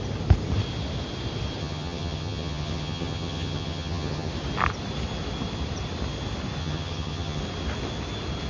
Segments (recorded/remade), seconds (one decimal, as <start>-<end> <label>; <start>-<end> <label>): 0.0-1.6 recorded; 1.6-4.3 remade; 4.3-6.6 recorded; 6.6-7.4 remade; 7.4-8.5 recorded

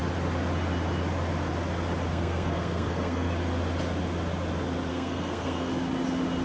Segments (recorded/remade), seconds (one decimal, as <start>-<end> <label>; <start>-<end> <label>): 0.0-2.1 recorded; 2.1-3.3 remade; 3.3-4.9 recorded; 4.9-5.7 remade; 5.7-6.4 recorded

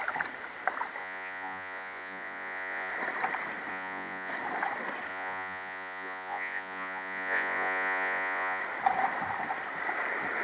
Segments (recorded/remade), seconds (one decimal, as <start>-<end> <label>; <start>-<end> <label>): 0.0-1.0 recorded; 1.0-2.9 remade; 2.9-3.7 recorded; 3.7-4.3 remade; 4.3-5.1 recorded; 5.1-8.6 remade; 8.6-10.4 recorded

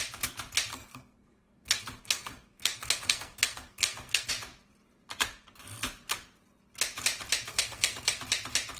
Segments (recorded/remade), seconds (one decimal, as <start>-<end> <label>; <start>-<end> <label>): 0.0-0.7 recorded; 0.7-4.3 remade; 4.3-7.5 recorded; 7.5-8.2 remade; 8.2-8.8 recorded

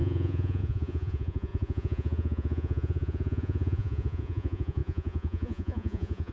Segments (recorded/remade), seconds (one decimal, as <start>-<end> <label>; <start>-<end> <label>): 0.0-6.3 remade

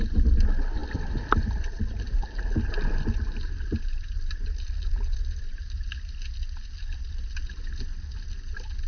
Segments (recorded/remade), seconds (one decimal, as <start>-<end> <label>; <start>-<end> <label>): 0.0-8.9 recorded